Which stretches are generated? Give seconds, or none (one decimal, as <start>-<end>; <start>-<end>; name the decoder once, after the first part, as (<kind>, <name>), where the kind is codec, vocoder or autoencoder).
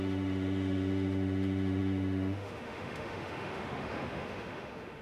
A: 0.0-5.0 (autoencoder, DAC-VAE)